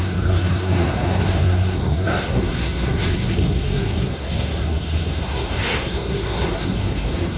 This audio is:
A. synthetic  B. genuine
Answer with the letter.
A